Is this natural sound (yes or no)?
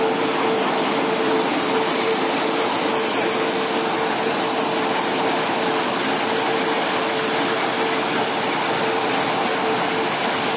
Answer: yes